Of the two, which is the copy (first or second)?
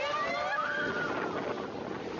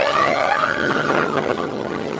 second